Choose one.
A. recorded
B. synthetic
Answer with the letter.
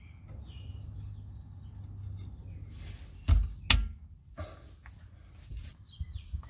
A